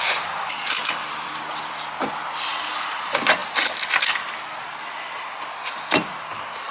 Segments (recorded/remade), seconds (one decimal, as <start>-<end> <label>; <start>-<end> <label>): 0.0-6.7 recorded